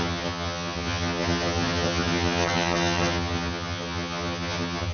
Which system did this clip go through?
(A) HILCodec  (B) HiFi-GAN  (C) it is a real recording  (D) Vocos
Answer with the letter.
B